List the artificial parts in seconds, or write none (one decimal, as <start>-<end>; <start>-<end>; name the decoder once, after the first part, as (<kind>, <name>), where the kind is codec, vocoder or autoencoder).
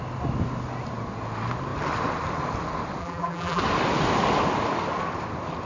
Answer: 3.0-3.6 (vocoder, BigVGAN v2)